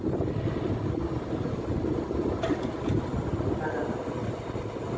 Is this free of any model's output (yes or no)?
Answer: yes